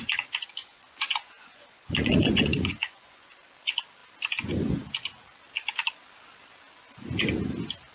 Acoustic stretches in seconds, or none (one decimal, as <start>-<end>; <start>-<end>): 0.0-0.6; 3.3-7.9